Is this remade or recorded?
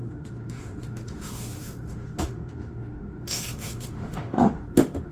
remade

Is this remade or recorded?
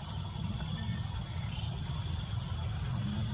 recorded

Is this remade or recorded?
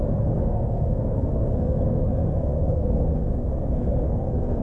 remade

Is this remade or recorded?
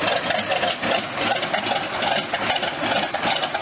recorded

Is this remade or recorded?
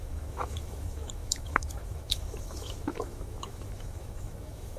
remade